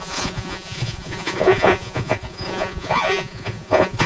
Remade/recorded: remade